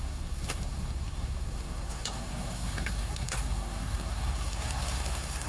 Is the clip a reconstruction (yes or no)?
yes